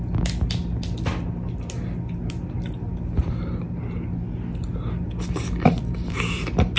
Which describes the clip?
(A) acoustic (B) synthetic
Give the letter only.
A